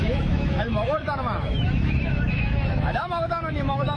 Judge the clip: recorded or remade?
remade